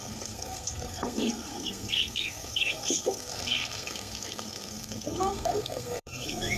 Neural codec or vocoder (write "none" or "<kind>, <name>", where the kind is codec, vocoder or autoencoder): codec, SNAC